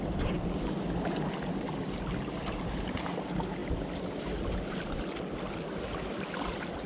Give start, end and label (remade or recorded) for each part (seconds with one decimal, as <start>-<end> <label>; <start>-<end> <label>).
0.0-6.9 recorded